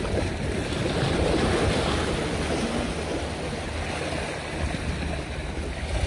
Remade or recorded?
recorded